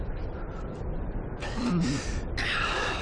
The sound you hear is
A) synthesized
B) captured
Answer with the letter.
B